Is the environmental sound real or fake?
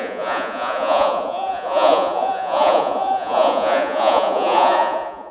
fake